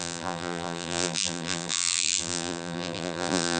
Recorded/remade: remade